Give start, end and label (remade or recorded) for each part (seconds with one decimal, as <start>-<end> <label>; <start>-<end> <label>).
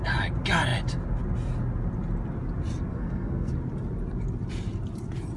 0.0-2.9 recorded; 2.9-3.5 remade; 3.5-5.4 recorded